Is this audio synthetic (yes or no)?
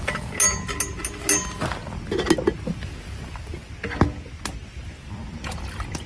no